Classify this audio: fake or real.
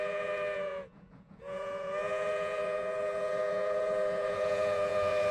fake